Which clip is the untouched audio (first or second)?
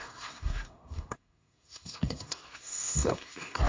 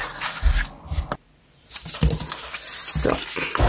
second